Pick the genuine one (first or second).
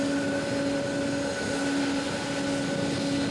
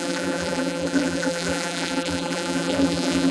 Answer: first